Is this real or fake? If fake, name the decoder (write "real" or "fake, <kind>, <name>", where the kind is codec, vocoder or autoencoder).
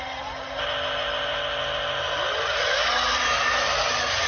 real